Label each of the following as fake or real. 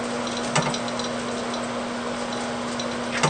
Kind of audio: real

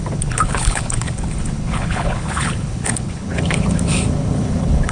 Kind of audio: fake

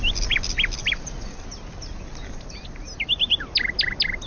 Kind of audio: real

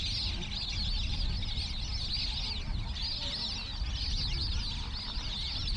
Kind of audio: real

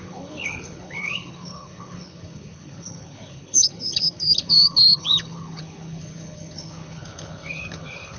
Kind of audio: fake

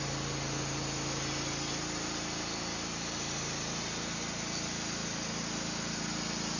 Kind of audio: real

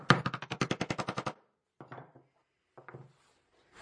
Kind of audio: real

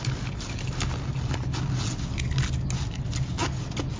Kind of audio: real